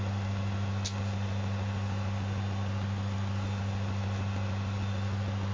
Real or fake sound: real